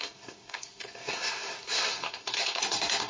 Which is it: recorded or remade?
remade